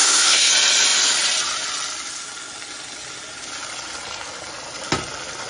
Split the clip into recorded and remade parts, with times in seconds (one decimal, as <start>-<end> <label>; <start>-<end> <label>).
0.0-0.5 remade; 0.5-5.5 recorded